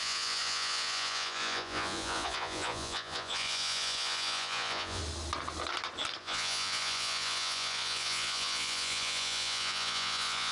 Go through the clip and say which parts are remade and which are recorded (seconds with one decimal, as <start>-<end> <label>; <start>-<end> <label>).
0.0-5.0 remade; 5.0-6.2 recorded; 6.2-10.5 remade